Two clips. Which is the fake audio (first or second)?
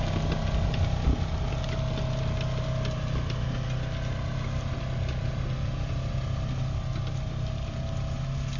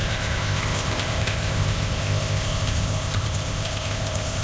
second